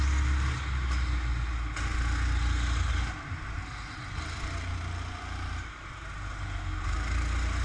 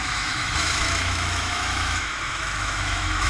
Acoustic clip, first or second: first